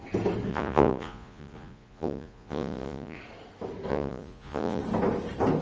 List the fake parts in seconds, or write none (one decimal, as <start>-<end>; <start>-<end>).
0.5-3.2; 3.9-4.8